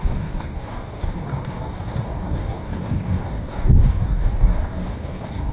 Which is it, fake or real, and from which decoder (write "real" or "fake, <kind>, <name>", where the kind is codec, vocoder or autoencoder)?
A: fake, codec, DAC